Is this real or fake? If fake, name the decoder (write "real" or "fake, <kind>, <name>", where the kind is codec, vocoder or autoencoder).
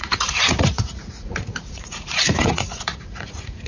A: fake, vocoder, Vocos